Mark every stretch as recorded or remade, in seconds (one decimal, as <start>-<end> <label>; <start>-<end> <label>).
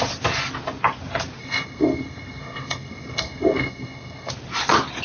0.0-1.4 recorded; 1.4-4.3 remade; 4.3-5.0 recorded